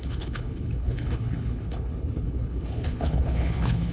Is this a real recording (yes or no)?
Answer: no